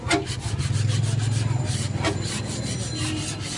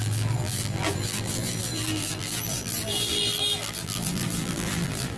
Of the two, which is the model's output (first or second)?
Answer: second